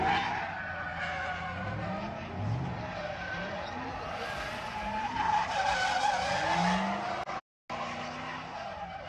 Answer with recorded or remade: recorded